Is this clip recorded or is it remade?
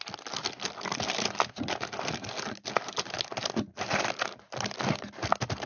recorded